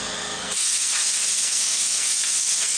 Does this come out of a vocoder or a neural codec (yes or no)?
yes